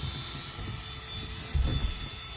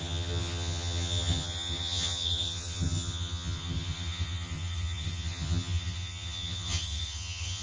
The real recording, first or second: first